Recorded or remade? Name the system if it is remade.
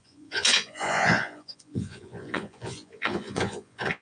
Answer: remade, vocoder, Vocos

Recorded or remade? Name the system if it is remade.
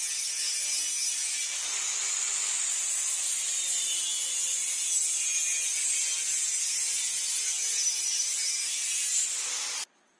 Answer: recorded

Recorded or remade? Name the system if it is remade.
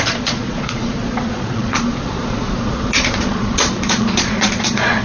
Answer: remade, vocoder, Vocos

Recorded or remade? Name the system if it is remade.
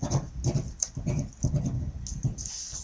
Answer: recorded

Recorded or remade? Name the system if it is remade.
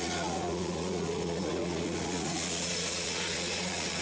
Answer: remade, vocoder, Vocos